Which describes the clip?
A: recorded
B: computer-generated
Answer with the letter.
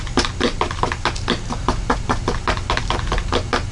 A